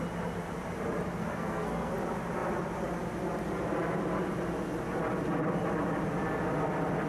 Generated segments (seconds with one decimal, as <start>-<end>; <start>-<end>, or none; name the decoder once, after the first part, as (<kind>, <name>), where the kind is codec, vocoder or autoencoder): 1.2-1.9 (codec, SNAC)